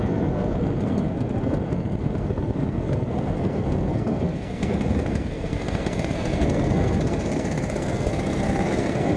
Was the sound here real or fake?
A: fake